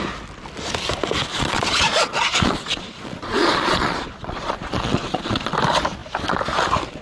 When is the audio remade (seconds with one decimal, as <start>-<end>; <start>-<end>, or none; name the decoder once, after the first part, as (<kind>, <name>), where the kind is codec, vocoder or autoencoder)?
1.3-5.5 (vocoder, Vocos)